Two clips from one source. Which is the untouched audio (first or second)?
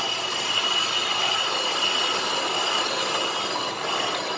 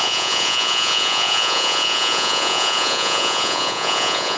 first